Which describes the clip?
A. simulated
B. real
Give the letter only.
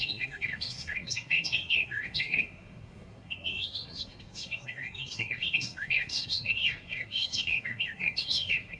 A